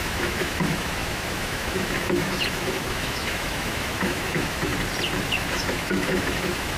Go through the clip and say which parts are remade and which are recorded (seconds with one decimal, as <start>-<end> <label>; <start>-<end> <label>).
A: 0.0-4.7 remade; 4.7-5.2 recorded; 5.2-6.8 remade